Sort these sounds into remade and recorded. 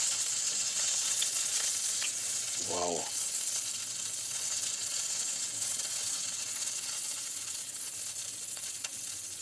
remade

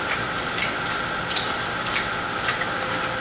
recorded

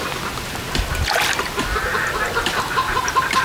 recorded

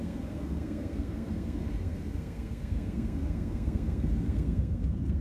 remade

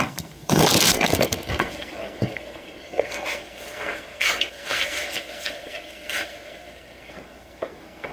remade